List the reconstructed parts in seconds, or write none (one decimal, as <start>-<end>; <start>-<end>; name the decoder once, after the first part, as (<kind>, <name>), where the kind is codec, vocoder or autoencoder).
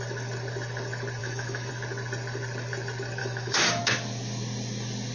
1.2-1.7 (autoencoder, DAC-VAE); 3.2-3.8